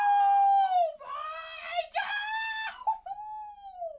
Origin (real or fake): real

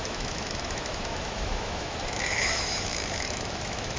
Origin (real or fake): fake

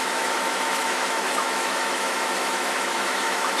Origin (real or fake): fake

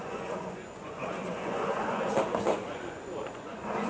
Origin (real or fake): fake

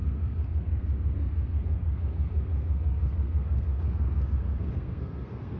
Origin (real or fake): fake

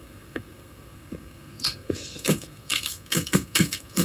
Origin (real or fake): fake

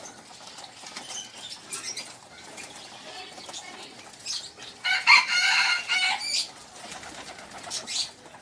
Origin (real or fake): real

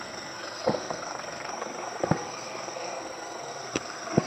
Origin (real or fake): fake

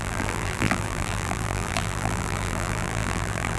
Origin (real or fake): fake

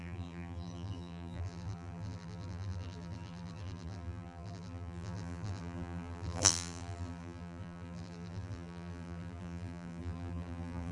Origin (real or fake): fake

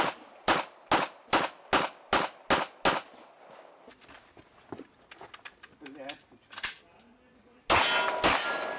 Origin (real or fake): real